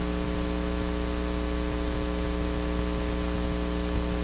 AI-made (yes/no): no